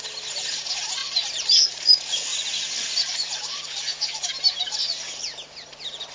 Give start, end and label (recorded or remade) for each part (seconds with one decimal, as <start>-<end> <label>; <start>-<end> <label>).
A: 0.0-2.3 recorded; 2.3-4.6 remade; 4.6-6.1 recorded